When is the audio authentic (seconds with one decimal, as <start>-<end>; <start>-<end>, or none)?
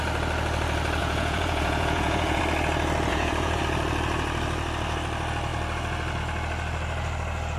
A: 0.0-1.0; 2.4-3.1; 3.6-7.6